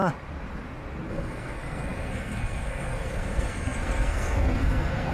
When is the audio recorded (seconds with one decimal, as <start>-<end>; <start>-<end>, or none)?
0.0-1.1